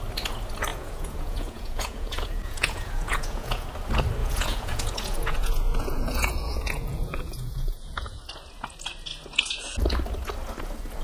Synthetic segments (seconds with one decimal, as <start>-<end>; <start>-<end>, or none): 0.7-3.7; 4.2-8.2